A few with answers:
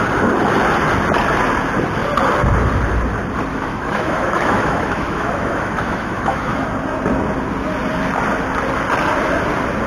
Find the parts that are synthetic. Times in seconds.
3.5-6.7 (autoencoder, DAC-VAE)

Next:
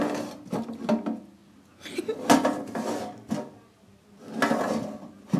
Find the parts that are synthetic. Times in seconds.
none

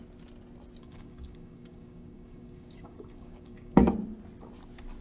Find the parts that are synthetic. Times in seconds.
0.8-3.8 (codec, DAC)

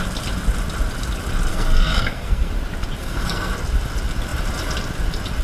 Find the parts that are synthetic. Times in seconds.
1.5-2.5 (codec, SNAC); 3.0-3.5

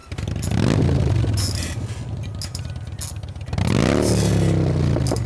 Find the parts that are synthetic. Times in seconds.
none

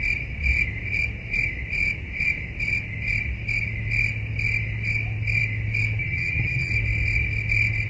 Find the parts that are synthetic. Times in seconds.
6.0-6.7 (vocoder, HiFi-GAN)

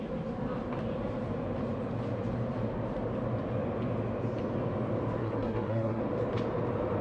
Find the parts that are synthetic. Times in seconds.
5.2-6.0 (codec, SNAC)

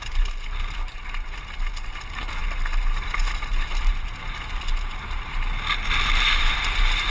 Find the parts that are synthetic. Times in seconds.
none